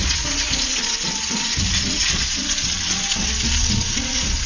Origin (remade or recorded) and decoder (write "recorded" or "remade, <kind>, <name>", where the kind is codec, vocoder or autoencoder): remade, vocoder, Vocos